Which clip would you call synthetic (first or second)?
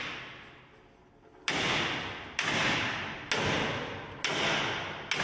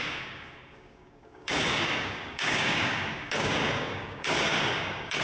second